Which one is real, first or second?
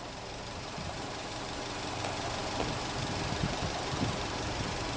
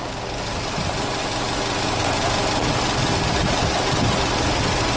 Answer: second